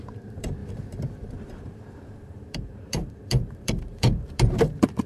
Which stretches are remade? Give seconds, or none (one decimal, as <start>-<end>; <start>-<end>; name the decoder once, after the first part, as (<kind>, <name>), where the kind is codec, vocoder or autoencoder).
0.0-5.1 (vocoder, BigVGAN v2)